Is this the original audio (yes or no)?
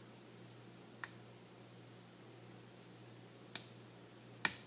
yes